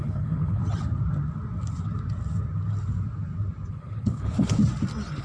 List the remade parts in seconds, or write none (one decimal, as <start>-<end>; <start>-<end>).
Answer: 0.0-0.6; 3.7-4.6